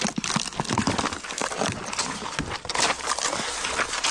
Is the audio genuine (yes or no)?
yes